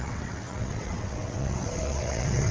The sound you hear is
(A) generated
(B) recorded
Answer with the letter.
A